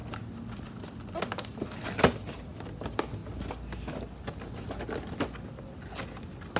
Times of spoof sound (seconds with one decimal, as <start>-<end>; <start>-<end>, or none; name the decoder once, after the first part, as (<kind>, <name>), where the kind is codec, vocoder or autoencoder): none

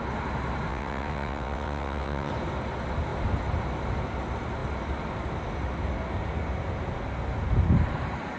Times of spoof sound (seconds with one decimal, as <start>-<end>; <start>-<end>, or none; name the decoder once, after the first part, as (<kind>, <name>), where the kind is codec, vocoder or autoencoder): 0.7-2.3 (vocoder, WaveNeXt)

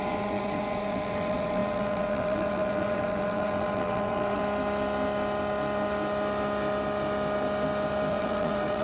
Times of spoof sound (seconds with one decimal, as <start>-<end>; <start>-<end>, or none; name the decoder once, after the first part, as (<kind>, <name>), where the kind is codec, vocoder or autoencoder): 0.0-4.4 (vocoder, WaveNeXt); 8.1-8.8

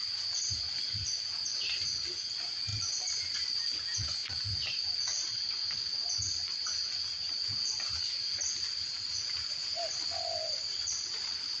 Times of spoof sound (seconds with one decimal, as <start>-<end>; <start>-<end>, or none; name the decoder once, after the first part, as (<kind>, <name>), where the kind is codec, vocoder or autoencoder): none

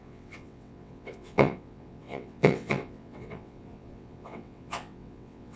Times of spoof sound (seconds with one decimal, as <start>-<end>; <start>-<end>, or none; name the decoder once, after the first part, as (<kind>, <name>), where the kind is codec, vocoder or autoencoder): 0.0-5.6 (vocoder, WaveNeXt)

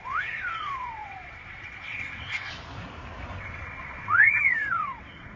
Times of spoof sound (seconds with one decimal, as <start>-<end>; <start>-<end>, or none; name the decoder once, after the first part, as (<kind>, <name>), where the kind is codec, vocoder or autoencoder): 0.0-2.5 (vocoder, WaveNeXt); 3.4-5.4

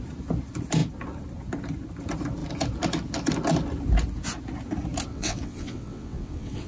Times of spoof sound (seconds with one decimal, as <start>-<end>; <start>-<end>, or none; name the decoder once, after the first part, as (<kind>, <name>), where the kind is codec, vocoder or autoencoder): 5.1-6.7 (vocoder, WaveNeXt)

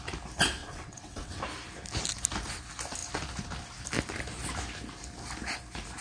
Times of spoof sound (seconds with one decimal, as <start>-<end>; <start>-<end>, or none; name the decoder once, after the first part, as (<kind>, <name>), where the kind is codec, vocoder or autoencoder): 0.6-1.4 (vocoder, WaveNeXt)